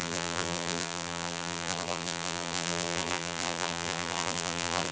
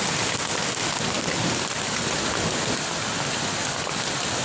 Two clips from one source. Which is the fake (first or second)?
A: first